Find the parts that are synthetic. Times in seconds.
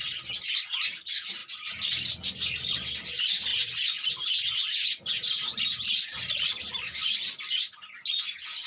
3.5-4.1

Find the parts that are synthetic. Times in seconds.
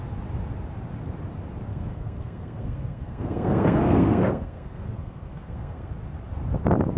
1.7-5.9